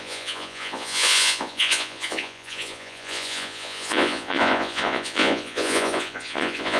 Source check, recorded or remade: remade